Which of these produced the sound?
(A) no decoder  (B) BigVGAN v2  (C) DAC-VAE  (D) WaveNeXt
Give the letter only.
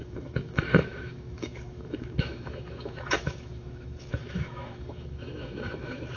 C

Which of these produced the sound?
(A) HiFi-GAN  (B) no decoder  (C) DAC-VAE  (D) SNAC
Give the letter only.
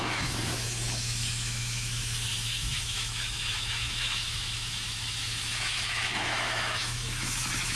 C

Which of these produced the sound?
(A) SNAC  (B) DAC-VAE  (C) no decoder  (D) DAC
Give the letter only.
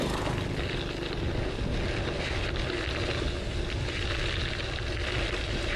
C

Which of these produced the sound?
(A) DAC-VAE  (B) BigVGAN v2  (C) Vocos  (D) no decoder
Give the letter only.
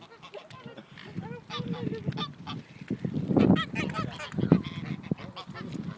D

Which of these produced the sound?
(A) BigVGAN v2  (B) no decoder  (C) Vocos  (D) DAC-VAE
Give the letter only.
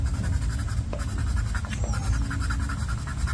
B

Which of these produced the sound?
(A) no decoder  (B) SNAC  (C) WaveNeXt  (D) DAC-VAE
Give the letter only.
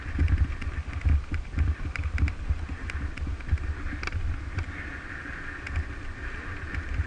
A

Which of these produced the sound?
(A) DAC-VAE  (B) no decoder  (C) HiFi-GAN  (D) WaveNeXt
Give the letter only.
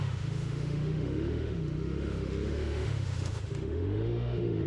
A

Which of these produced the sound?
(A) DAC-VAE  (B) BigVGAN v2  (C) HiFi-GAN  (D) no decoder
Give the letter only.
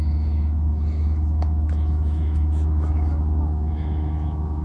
A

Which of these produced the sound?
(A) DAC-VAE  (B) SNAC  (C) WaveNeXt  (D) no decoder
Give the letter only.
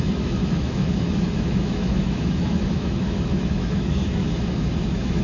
A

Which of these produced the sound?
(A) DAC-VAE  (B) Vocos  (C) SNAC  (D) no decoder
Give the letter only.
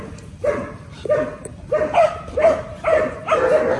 D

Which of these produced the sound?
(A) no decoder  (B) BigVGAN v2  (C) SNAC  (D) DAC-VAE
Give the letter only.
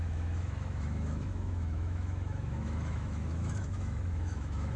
D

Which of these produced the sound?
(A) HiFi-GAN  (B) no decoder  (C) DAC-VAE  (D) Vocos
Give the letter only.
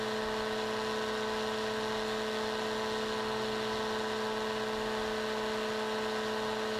B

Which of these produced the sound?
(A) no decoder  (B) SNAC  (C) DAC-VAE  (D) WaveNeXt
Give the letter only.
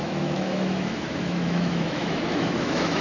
C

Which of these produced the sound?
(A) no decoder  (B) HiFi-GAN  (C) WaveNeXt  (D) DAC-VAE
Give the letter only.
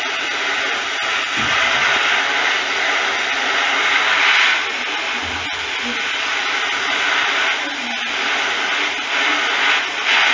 A